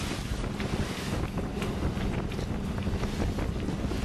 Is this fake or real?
real